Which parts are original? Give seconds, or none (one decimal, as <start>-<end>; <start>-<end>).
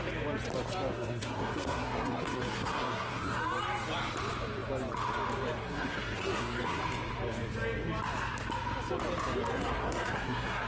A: 0.0-0.9; 3.4-5.6; 6.8-9.5